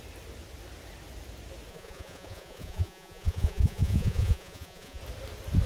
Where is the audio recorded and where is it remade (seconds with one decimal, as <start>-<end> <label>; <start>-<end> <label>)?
0.0-1.7 recorded; 1.7-5.0 remade; 5.0-5.7 recorded